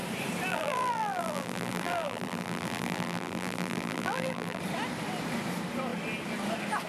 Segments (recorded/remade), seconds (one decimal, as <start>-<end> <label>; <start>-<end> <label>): 0.0-0.5 recorded; 0.5-4.6 remade; 4.6-6.9 recorded

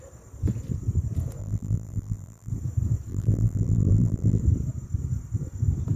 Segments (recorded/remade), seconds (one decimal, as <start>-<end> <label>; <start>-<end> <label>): 0.0-1.4 recorded; 1.4-2.5 remade; 2.5-3.1 recorded; 3.1-4.4 remade; 4.4-6.0 recorded

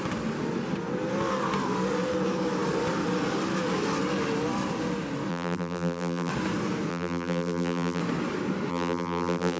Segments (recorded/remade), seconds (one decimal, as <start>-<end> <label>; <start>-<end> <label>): 0.0-5.3 recorded; 5.3-6.3 remade; 6.3-6.9 recorded; 6.9-8.0 remade; 8.0-8.7 recorded; 8.7-9.6 remade

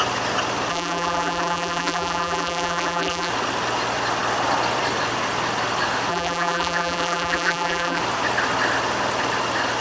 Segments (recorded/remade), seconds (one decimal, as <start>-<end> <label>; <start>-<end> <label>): 0.0-0.7 recorded; 0.7-3.3 remade; 3.3-6.1 recorded; 6.1-8.0 remade; 8.0-9.8 recorded

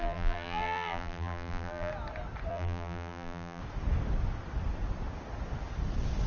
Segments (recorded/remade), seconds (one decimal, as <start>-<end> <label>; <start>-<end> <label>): 0.0-1.9 remade; 1.9-2.5 recorded; 2.5-3.6 remade; 3.6-6.3 recorded

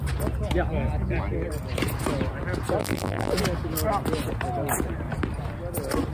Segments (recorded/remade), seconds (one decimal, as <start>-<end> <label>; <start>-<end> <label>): 0.0-2.8 recorded; 2.8-3.3 remade; 3.3-6.1 recorded

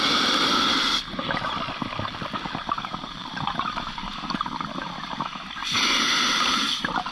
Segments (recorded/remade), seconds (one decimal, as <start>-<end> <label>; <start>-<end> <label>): 0.0-3.2 recorded; 3.2-4.4 remade; 4.4-5.6 recorded; 5.6-6.5 remade; 6.5-7.1 recorded

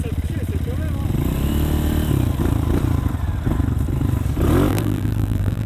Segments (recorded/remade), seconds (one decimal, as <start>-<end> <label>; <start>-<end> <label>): 0.0-4.7 recorded; 4.7-5.7 remade